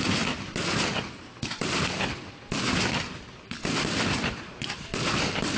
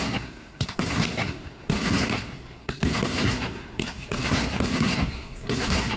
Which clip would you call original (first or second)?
first